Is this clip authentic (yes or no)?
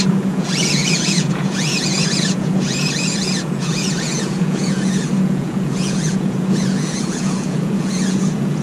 no